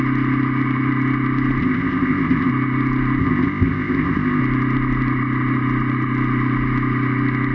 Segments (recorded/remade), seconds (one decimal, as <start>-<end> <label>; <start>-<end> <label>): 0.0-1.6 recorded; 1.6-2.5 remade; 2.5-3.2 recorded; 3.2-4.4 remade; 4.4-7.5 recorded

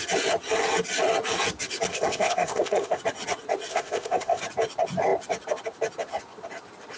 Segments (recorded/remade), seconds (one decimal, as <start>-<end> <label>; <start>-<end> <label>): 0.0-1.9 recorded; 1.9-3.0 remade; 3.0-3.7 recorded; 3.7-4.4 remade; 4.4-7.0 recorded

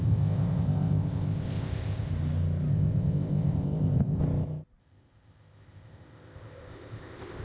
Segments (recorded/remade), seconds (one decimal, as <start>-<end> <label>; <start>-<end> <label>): 0.0-2.1 remade; 2.1-2.7 recorded; 2.7-4.2 remade; 4.2-4.8 recorded; 4.8-7.4 remade